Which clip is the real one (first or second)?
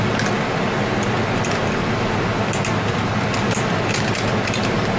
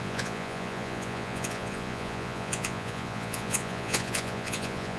first